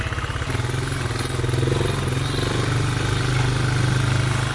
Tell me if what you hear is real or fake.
real